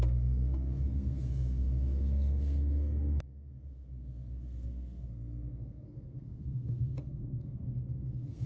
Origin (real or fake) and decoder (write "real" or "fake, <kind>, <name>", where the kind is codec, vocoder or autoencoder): fake, codec, SNAC